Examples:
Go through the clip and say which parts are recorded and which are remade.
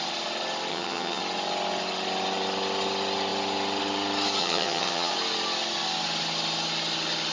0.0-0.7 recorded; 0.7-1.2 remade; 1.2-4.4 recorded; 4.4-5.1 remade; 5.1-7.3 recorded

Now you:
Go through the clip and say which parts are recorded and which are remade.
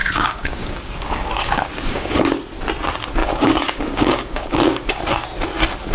0.0-2.3 remade; 2.3-3.2 recorded; 3.2-5.0 remade; 5.0-5.9 recorded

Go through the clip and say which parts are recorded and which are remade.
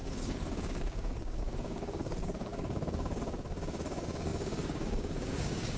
0.0-5.8 remade